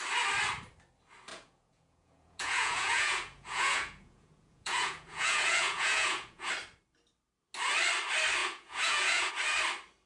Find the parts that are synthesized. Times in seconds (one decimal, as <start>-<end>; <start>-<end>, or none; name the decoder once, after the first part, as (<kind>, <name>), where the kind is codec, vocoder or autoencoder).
1.3-6.5 (vocoder, Vocos); 8.4-9.3